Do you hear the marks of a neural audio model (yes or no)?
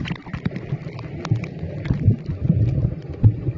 no